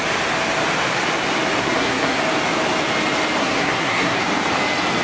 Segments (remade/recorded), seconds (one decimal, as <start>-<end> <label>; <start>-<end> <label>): 0.0-1.6 recorded; 1.6-2.2 remade; 2.2-3.4 recorded; 3.4-4.2 remade; 4.2-5.0 recorded

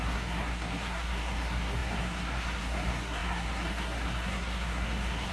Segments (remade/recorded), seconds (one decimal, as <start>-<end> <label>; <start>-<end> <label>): 0.0-5.3 remade

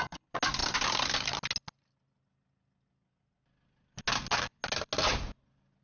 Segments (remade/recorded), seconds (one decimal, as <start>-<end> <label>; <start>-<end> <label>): 0.0-5.8 recorded

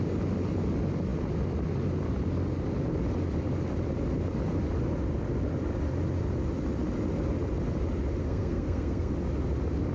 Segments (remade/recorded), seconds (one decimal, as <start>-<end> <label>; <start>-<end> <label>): 0.0-8.2 recorded; 8.2-9.1 remade; 9.1-9.9 recorded